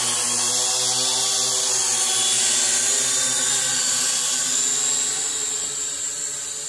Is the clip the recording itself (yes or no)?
yes